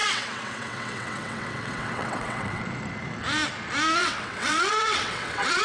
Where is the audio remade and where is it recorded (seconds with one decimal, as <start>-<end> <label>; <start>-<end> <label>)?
0.0-2.6 remade; 2.6-4.0 recorded; 4.0-5.6 remade